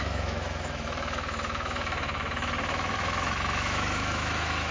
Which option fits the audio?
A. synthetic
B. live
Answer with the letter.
A